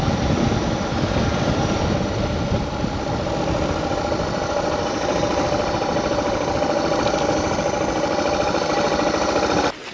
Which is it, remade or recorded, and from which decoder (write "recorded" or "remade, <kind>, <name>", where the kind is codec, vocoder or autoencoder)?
recorded